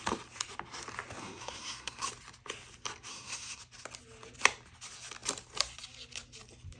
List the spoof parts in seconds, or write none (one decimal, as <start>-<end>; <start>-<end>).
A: 1.2-2.1; 3.1-3.6